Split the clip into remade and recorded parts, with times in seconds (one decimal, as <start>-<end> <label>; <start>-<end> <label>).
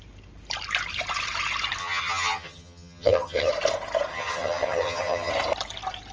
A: 0.0-1.8 recorded; 1.8-3.5 remade; 3.5-4.1 recorded; 4.1-5.3 remade; 5.3-6.1 recorded